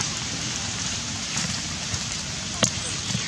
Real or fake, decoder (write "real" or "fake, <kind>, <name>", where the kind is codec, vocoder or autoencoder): fake, vocoder, BigVGAN v2